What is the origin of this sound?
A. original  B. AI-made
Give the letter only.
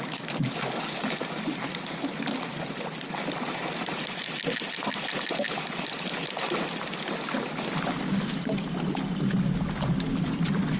A